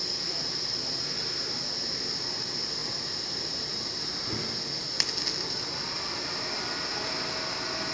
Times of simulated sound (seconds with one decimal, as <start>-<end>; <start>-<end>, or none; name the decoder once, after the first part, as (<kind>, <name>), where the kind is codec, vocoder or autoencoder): 0.0-1.6 (vocoder, BigVGAN v2); 2.8-4.0